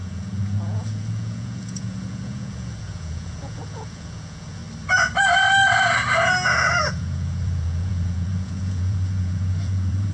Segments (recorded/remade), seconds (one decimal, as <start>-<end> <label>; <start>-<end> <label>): 0.0-4.6 remade; 4.6-6.9 recorded; 6.9-10.1 remade